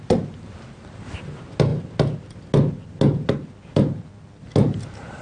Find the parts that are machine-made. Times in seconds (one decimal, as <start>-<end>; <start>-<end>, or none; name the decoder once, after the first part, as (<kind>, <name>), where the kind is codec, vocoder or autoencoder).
none